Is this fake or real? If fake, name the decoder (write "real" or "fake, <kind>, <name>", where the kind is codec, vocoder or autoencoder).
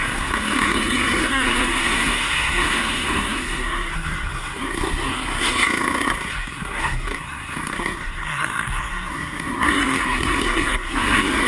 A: fake, codec, SNAC